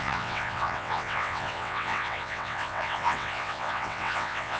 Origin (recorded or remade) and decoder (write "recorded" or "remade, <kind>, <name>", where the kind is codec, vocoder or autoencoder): remade, vocoder, WaveNeXt